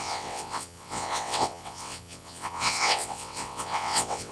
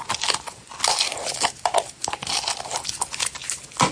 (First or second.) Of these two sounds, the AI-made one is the first